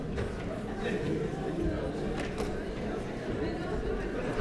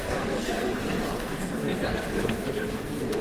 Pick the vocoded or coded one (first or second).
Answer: second